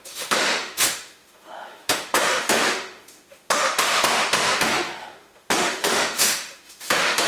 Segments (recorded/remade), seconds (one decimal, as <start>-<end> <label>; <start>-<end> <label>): 0.0-7.3 remade